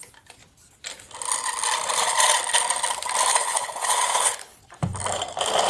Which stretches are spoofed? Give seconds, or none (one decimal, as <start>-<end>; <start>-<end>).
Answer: 3.3-4.6